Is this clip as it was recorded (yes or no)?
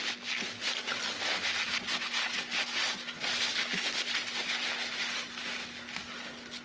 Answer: yes